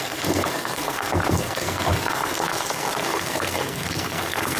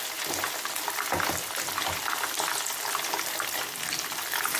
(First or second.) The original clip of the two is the second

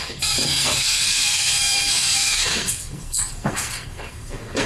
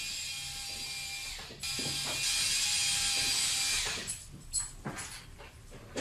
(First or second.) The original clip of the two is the second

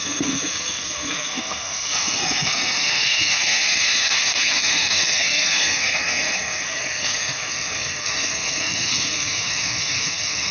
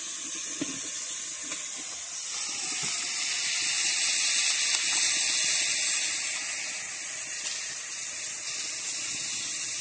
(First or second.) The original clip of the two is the second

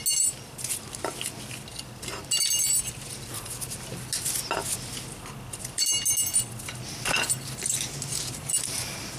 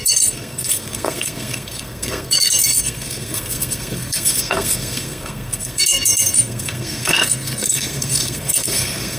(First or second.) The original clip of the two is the first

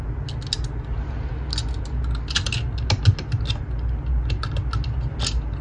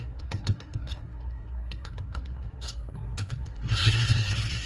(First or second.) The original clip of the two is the first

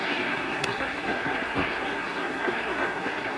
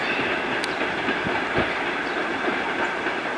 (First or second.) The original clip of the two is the second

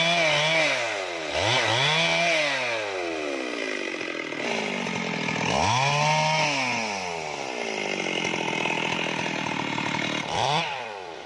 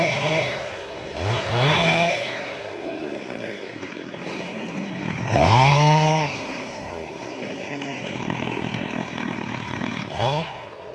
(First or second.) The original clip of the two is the first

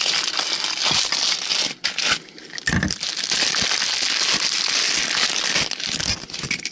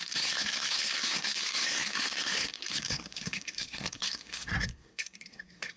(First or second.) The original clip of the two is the first